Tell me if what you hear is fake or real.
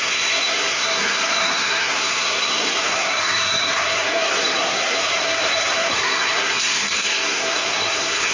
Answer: fake